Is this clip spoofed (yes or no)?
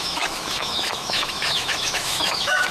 yes